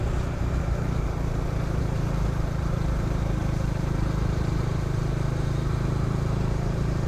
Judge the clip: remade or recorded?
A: remade